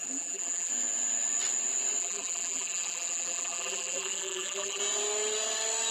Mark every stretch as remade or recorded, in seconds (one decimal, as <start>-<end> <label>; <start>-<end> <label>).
0.0-0.7 remade; 0.7-2.0 recorded; 2.0-4.8 remade; 4.8-5.9 recorded